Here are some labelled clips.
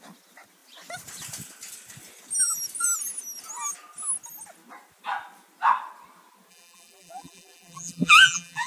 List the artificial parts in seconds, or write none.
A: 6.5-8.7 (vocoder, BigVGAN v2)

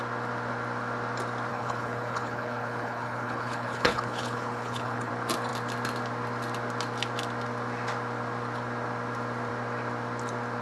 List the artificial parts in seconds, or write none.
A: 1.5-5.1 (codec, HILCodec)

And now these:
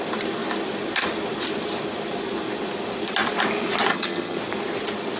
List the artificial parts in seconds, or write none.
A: 3.9-4.4 (vocoder, HiFi-GAN)

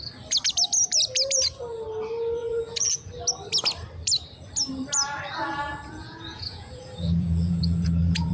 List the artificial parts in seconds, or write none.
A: 2.4-3.1 (vocoder, Vocos); 6.0-8.3

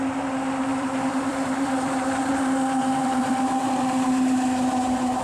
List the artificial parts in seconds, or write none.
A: 0.7-2.2 (vocoder, BigVGAN v2); 3.0-3.5

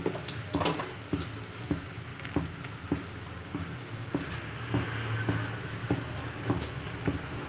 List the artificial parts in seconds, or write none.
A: 3.4-4.3 (codec, DAC); 5.8-6.8

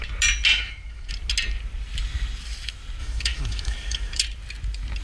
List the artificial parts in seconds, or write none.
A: 0.5-1.1 (autoencoder, DAC-VAE); 3.0-4.2